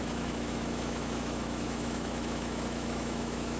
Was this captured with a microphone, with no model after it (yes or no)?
no